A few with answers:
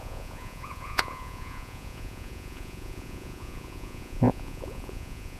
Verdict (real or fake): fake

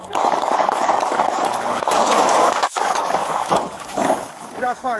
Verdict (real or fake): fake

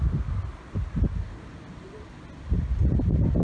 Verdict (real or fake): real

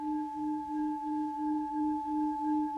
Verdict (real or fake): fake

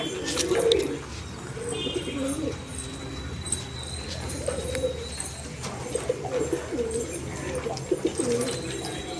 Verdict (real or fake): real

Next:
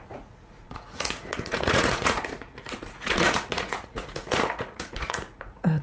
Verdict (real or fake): fake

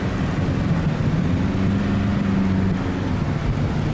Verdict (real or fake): real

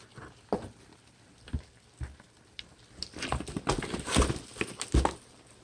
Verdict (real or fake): real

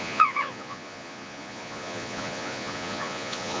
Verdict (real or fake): fake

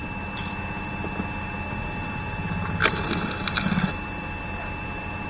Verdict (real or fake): real